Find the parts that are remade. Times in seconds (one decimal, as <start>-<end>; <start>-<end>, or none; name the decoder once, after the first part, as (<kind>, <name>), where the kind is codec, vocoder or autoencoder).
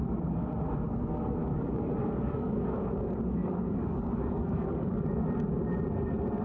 1.4-5.2 (codec, DAC)